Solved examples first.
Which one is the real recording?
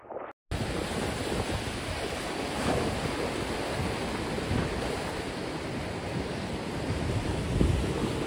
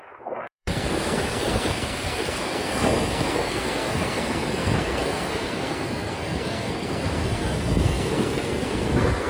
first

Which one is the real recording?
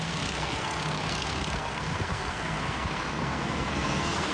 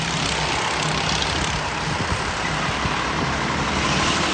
second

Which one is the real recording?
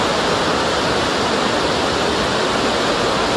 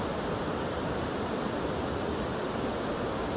first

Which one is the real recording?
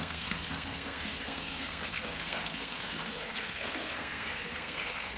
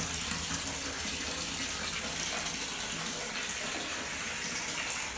second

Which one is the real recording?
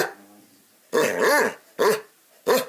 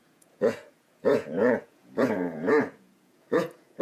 first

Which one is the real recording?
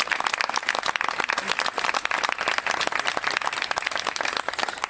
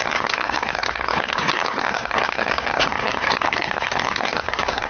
first